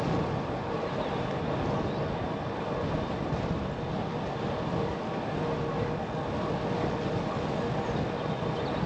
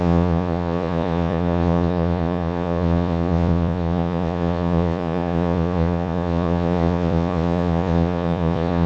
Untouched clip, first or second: first